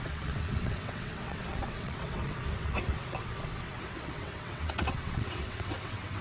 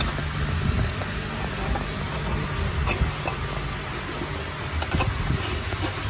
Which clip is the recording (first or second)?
second